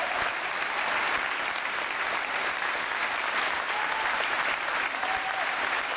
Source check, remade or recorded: remade